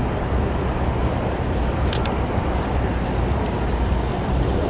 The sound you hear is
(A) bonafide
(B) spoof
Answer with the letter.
A